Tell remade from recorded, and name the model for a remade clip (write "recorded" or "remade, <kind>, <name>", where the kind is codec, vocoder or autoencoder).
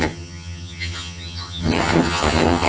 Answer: remade, vocoder, HiFi-GAN